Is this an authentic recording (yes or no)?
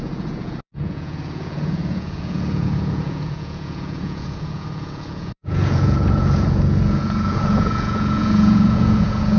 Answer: no